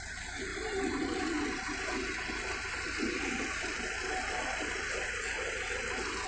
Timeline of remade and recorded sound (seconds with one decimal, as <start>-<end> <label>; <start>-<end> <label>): 0.0-6.3 recorded